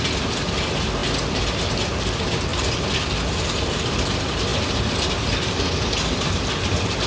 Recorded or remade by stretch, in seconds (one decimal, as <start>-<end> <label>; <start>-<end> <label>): 0.0-7.1 recorded